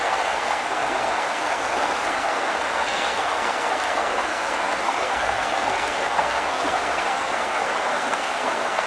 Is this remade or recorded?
remade